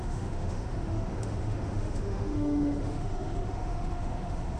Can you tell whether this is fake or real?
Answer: fake